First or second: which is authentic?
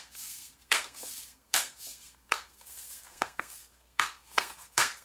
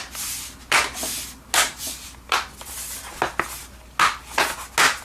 second